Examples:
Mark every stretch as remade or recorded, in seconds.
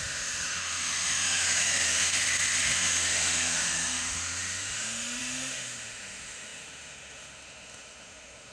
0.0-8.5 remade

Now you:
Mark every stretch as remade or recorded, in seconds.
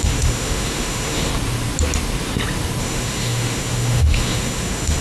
0.0-1.3 remade; 1.3-2.8 recorded; 2.8-5.0 remade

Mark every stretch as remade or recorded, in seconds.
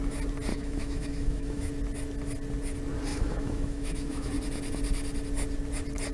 0.0-0.5 recorded; 0.5-1.7 remade; 1.7-3.1 recorded; 3.1-4.3 remade; 4.3-6.1 recorded